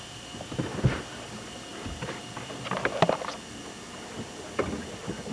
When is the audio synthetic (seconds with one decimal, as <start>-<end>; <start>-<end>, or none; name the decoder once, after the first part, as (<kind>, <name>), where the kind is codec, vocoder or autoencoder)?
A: none